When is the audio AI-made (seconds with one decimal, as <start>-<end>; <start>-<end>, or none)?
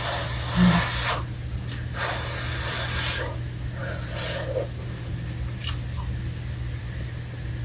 none